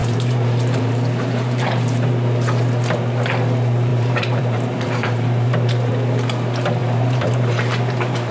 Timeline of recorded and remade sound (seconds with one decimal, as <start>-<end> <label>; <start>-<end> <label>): 0.0-2.1 remade; 2.1-3.9 recorded; 3.9-5.9 remade; 5.9-6.8 recorded; 6.8-8.3 remade